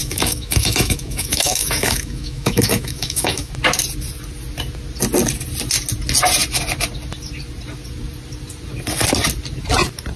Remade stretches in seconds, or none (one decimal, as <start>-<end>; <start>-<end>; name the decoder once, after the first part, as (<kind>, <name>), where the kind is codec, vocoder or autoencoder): 0.0-3.5 (autoencoder, DAC-VAE)